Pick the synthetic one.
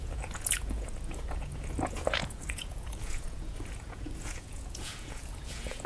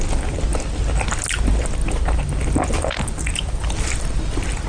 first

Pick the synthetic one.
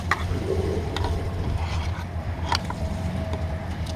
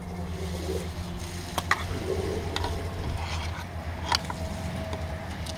first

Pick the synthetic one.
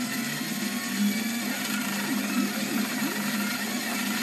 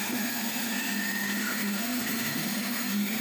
second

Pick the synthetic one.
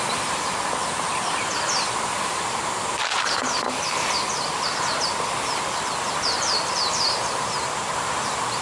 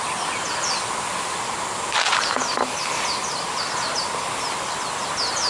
first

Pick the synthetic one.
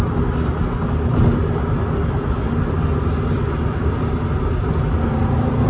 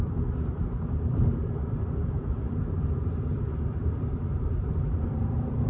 second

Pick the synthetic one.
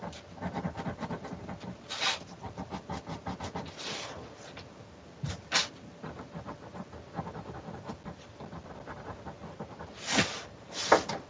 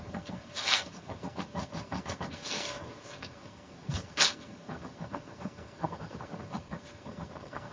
second